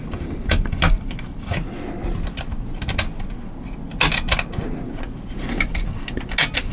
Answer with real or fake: real